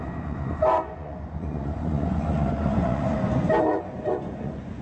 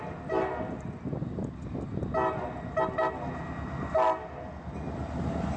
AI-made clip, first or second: first